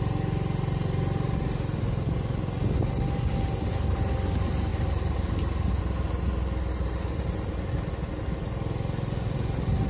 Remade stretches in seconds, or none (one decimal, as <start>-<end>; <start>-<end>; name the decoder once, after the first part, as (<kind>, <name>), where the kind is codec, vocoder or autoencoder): none